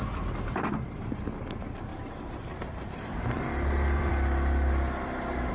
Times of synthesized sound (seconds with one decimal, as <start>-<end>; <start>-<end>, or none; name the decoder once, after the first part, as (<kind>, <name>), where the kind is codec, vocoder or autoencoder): 1.9-5.5 (vocoder, BigVGAN v2)